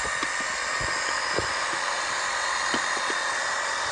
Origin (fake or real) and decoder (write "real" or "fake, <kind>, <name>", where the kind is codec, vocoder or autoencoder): real